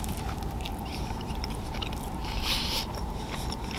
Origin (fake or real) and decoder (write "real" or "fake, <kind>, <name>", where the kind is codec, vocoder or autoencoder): fake, vocoder, BigVGAN v2